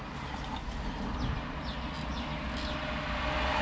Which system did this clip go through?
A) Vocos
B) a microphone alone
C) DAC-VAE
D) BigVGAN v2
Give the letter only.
B